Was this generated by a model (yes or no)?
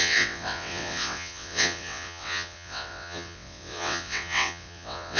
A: yes